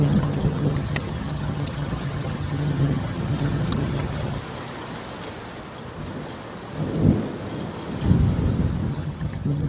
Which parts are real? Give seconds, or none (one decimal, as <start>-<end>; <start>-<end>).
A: 4.4-8.9